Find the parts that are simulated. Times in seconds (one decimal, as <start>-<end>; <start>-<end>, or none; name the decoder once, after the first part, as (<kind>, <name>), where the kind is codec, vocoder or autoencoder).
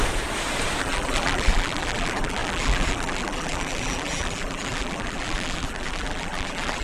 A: 0.8-6.8 (vocoder, BigVGAN v2)